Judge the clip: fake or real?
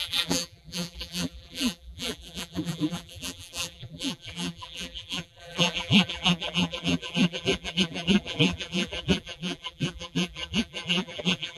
fake